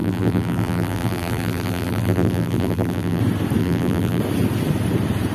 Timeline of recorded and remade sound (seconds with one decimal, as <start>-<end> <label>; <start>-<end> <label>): 0.0-3.2 remade; 3.2-3.6 recorded; 3.6-4.2 remade; 4.2-5.3 recorded